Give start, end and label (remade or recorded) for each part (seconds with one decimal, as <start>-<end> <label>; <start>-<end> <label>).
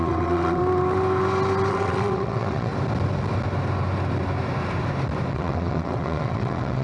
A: 0.0-0.6 remade; 0.6-1.7 recorded; 1.7-2.7 remade; 2.7-5.3 recorded; 5.3-6.8 remade